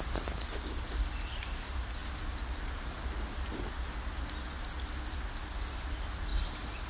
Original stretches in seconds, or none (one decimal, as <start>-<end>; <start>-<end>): 0.0-6.9

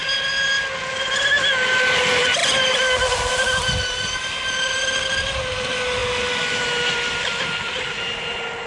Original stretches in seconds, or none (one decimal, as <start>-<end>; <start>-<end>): 0.0-8.7

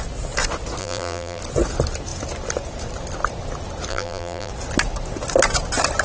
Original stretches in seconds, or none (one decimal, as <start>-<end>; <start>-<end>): 0.0-0.8; 1.4-3.9; 4.5-6.0

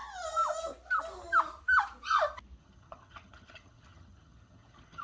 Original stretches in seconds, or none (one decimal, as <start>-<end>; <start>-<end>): 0.0-2.6